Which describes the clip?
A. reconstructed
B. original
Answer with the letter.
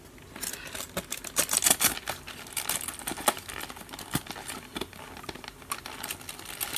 B